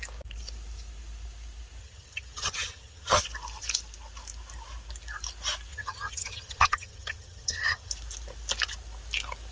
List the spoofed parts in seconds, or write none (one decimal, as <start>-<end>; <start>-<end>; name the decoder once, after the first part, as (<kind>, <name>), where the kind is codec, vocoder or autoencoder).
1.8-3.2 (vocoder, HiFi-GAN); 5.7-7.9